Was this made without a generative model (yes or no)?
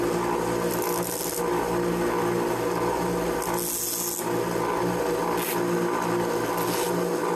yes